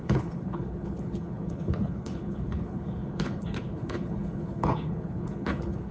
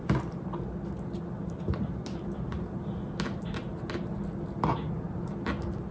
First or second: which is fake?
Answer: first